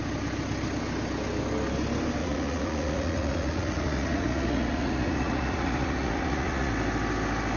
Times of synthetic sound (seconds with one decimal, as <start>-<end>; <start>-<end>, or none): 2.2-6.7